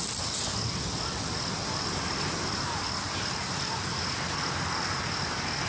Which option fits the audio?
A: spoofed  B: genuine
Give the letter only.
B